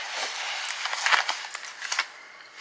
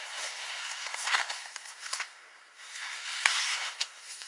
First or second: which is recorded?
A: first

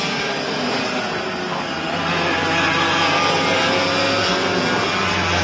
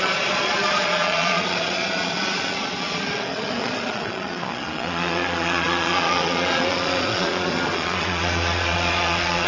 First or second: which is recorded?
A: first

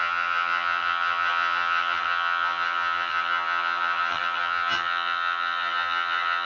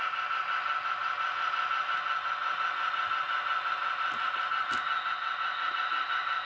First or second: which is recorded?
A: second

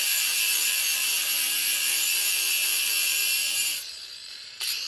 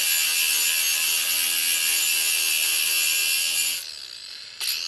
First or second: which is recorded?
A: second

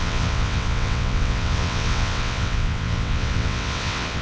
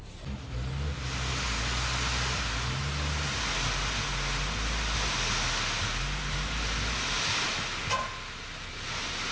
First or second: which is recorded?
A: second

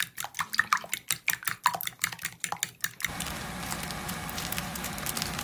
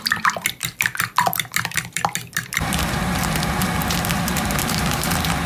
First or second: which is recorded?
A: first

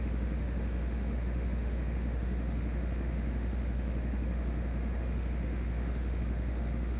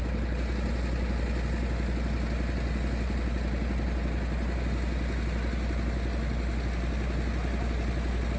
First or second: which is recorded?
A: second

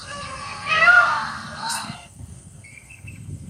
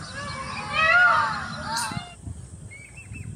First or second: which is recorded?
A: second